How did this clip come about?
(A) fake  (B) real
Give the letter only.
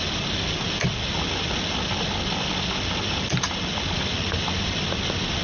B